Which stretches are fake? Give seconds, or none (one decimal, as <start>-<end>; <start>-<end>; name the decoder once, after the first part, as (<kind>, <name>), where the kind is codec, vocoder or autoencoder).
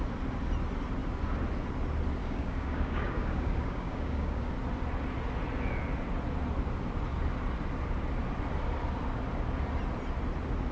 2.2-4.5 (codec, DAC)